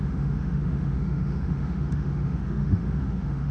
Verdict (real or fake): fake